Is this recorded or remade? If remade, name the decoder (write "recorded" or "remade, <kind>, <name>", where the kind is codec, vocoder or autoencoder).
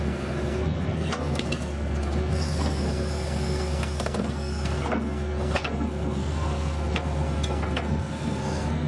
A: remade, codec, SNAC